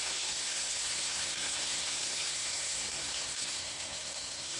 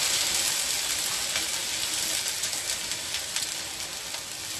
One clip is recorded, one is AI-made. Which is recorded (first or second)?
second